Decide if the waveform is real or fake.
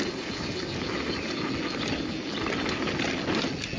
real